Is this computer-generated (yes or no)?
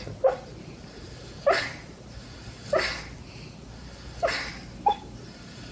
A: no